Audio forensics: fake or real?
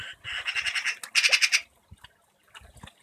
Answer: real